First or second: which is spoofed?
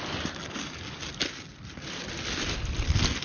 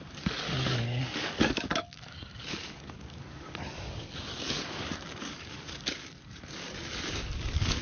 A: second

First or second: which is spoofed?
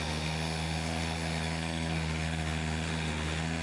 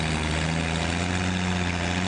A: first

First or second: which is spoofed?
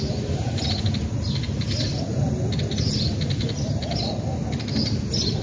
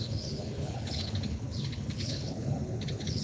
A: second